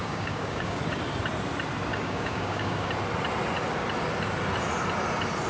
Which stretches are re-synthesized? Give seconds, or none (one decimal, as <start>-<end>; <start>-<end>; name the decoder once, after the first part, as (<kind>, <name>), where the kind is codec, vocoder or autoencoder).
0.0-0.8 (codec, DAC); 1.9-2.9